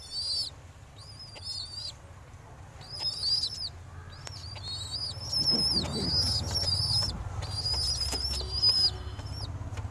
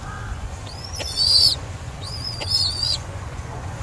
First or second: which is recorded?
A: first